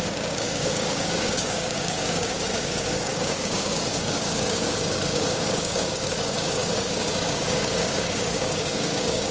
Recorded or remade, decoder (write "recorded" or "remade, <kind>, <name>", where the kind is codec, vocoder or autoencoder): remade, codec, DAC